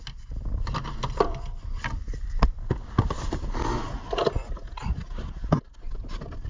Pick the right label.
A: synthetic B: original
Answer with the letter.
B